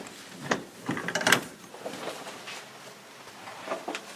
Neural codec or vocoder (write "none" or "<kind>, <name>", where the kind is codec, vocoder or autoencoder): none